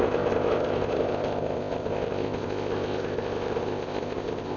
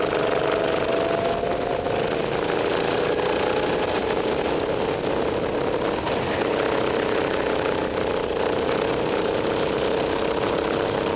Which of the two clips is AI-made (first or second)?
first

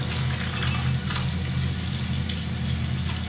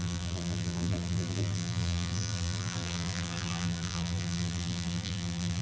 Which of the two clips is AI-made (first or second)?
second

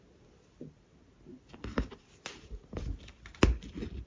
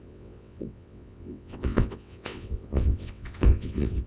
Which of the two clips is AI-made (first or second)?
second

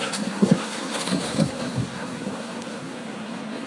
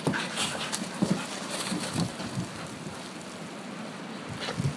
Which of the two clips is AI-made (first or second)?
first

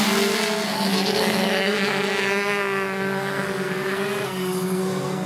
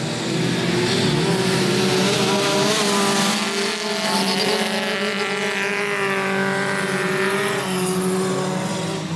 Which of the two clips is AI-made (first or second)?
first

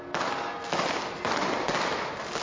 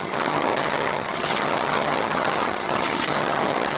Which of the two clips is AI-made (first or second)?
second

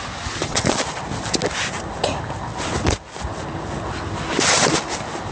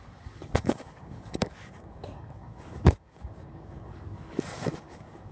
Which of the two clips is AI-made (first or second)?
second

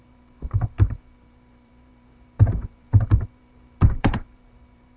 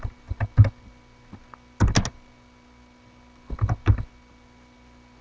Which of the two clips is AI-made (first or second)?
first